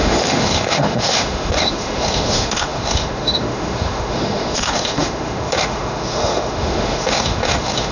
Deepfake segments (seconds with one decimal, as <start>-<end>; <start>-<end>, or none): 0.0-7.9